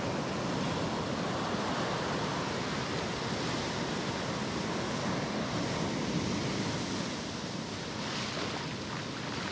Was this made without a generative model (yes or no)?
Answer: yes